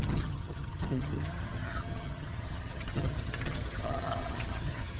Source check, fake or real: fake